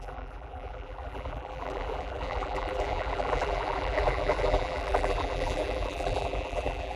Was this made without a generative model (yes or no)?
no